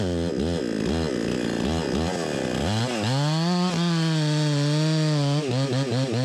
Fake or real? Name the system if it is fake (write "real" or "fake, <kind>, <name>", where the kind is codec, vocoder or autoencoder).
real